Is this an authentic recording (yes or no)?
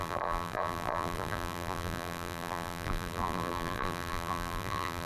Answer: no